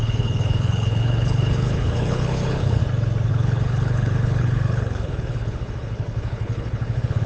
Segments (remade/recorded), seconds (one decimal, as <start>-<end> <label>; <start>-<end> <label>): 0.0-2.8 remade; 2.8-3.3 recorded; 3.3-7.3 remade